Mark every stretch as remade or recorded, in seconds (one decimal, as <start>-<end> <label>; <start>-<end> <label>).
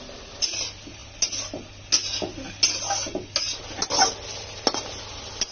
0.0-5.5 recorded